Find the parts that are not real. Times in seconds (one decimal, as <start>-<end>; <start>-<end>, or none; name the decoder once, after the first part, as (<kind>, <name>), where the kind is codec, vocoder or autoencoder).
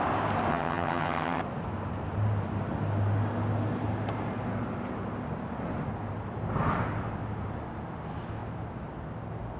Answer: 0.5-1.4 (vocoder, HiFi-GAN)